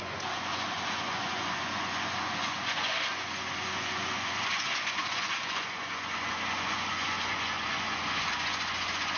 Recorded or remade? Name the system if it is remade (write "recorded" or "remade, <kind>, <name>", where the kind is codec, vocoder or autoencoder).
remade, vocoder, Vocos